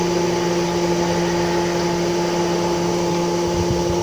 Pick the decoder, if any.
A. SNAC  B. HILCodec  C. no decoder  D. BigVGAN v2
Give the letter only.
C